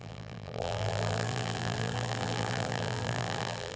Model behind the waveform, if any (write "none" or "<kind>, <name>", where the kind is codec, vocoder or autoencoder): vocoder, BigVGAN v2